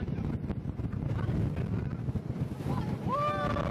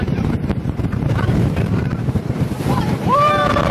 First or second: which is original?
first